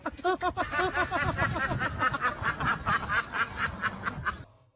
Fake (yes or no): no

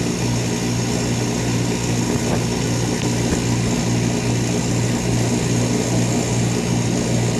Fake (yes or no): no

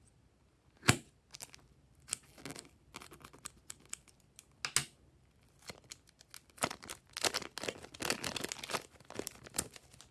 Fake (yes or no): no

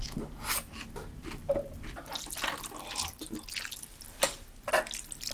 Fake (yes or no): no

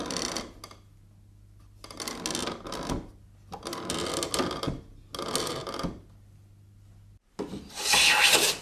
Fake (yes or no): no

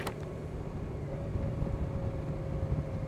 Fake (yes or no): no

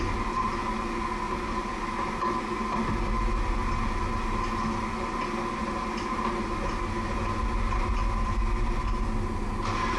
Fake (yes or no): no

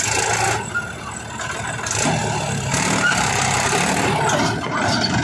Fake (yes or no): no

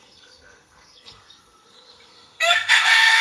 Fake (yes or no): yes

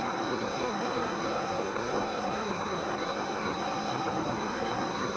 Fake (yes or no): yes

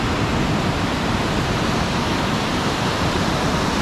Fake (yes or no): no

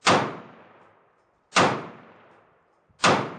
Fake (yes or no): no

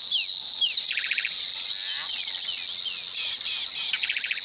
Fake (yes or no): no